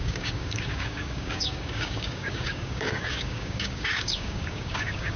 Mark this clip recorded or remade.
remade